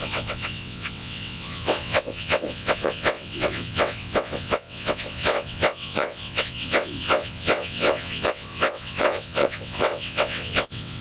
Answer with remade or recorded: remade